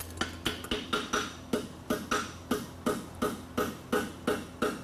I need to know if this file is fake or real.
real